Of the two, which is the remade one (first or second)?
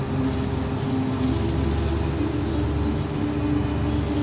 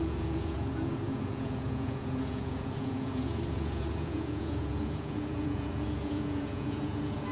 second